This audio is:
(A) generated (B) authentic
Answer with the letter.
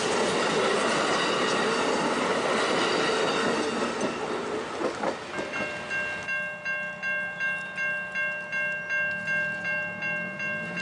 B